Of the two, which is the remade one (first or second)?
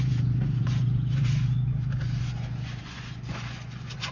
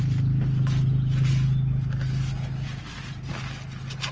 first